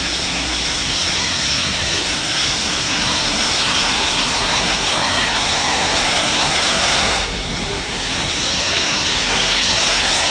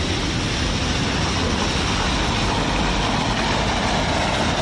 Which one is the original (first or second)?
second